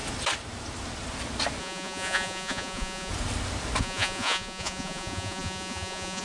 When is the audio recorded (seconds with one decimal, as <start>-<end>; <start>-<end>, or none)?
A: 0.0-1.6; 3.1-3.8